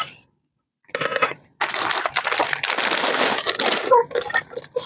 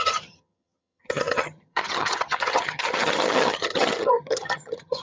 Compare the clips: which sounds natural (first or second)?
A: first